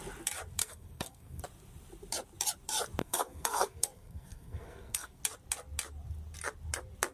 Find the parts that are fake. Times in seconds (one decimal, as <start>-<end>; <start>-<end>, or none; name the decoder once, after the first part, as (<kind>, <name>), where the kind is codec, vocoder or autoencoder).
0.6-1.4 (codec, SNAC); 3.0-5.2